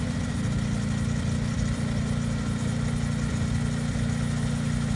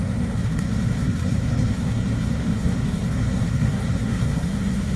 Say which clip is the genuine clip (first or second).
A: first